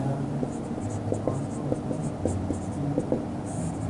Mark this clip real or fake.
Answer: real